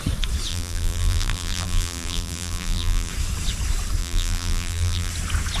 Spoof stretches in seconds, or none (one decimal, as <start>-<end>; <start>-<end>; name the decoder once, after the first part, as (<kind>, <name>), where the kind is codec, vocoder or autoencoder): 0.5-3.1 (vocoder, BigVGAN v2); 4.0-5.1

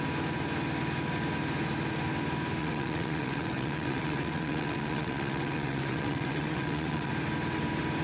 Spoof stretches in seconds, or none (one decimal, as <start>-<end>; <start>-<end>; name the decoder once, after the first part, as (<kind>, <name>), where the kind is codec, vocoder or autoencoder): 2.6-7.1 (vocoder, WaveNeXt)

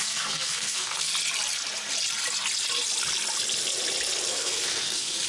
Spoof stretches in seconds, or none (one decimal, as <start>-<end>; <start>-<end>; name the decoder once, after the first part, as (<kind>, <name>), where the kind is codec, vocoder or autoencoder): 0.0-1.1 (codec, SNAC); 4.3-5.3

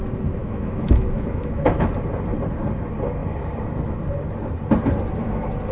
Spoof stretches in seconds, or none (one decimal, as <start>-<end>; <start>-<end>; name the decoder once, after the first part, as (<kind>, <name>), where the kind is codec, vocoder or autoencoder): 0.4-1.9 (autoencoder, DAC-VAE)

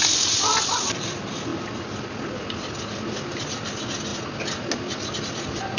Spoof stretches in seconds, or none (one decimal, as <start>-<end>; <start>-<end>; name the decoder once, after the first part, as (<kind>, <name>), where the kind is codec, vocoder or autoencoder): none

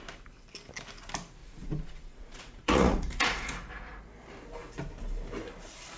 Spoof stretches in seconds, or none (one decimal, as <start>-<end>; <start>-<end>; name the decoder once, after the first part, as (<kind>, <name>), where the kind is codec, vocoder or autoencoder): 1.4-4.0 (vocoder, Vocos)